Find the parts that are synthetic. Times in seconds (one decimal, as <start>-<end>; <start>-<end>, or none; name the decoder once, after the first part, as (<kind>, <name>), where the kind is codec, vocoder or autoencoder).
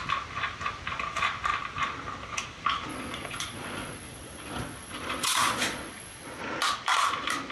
2.9-6.4 (vocoder, Vocos)